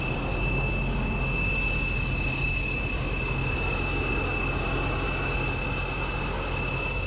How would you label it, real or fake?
real